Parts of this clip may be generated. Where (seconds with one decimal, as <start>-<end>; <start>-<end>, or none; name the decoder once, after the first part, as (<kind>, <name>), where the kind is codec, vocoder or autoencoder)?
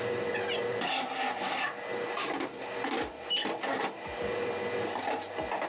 none